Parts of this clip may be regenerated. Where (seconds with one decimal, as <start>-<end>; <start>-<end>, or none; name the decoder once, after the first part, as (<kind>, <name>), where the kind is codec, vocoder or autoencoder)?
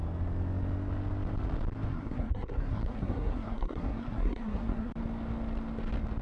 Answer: 1.9-4.9 (codec, SNAC)